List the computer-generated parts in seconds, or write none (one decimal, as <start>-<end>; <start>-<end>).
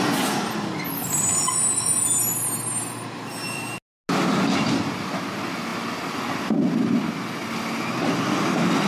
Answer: none